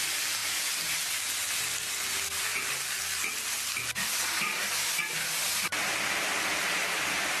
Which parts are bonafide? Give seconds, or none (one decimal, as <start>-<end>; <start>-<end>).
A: 0.0-7.4